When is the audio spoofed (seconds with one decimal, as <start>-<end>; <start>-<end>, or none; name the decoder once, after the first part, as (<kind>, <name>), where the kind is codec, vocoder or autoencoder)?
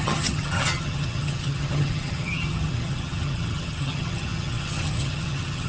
0.0-5.7 (vocoder, HiFi-GAN)